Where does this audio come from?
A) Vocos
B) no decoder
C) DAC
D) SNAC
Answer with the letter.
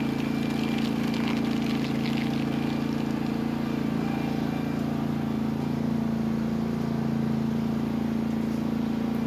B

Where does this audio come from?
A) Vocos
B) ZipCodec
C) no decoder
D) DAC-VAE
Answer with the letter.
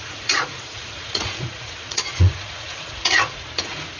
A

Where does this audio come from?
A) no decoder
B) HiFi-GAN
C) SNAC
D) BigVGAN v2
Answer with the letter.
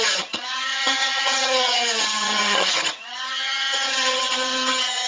B